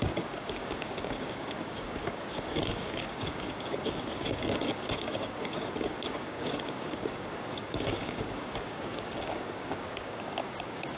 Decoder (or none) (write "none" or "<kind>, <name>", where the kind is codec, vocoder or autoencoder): codec, DAC